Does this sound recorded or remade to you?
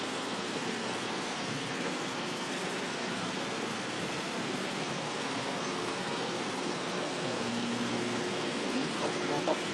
remade